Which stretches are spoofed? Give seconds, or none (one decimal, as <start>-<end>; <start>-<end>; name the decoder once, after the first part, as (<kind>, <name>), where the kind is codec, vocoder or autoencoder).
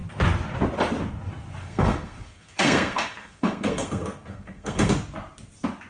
1.6-4.9 (codec, SNAC)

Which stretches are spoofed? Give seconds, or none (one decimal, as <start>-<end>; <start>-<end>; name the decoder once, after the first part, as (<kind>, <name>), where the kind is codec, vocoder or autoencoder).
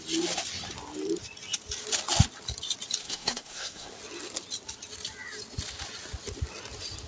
3.0-3.9 (codec, SNAC)